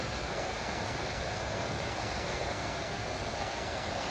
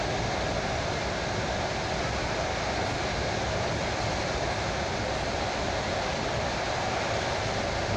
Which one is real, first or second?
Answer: second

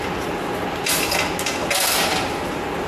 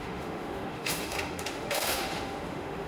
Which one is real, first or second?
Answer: first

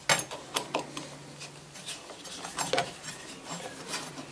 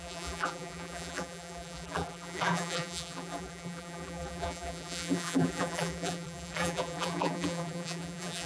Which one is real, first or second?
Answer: first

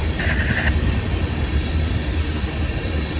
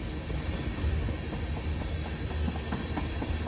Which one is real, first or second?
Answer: second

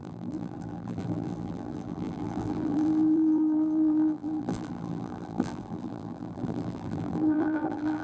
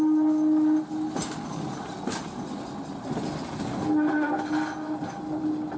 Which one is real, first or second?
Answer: second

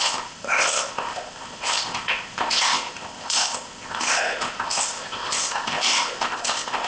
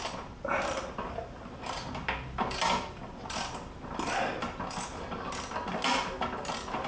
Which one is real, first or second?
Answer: second